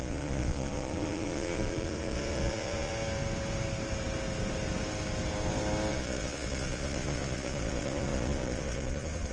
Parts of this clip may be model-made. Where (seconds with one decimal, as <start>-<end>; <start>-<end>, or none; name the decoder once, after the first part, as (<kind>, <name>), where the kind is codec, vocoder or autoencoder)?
0.0-2.9 (vocoder, Vocos); 5.9-9.3